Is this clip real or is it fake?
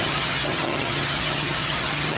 fake